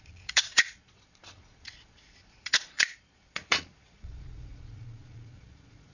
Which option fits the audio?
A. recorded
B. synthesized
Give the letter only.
B